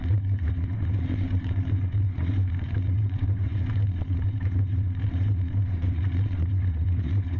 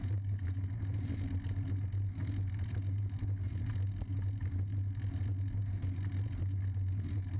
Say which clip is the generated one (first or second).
first